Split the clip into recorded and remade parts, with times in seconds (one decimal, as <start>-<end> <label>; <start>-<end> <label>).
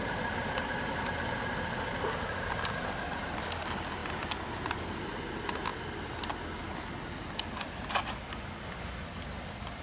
0.0-9.8 recorded